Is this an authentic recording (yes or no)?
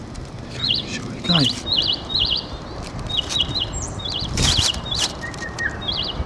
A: no